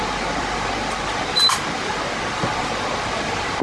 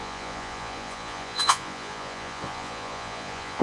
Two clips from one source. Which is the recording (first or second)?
first